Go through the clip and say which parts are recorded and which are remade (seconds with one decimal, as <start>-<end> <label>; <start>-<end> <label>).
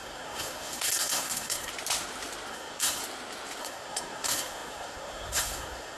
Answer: 0.0-1.7 remade; 1.7-2.5 recorded; 2.5-3.0 remade; 3.0-3.6 recorded; 3.6-6.0 remade